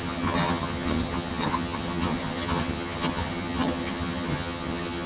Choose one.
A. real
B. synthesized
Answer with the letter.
B